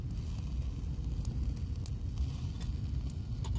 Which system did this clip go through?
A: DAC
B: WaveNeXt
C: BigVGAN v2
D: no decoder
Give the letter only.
D